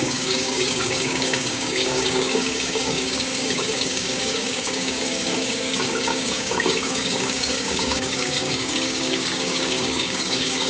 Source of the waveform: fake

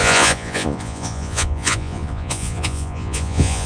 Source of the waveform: fake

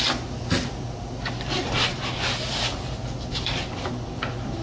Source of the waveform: real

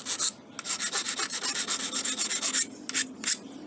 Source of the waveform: real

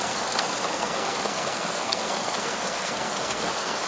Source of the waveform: fake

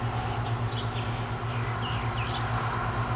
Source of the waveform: real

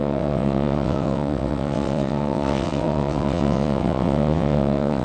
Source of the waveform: fake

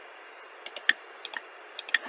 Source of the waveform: real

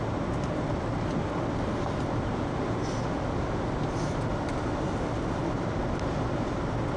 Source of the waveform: real